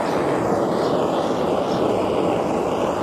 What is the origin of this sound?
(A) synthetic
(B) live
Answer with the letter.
B